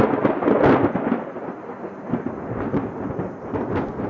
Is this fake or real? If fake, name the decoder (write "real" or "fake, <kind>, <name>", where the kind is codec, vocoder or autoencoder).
real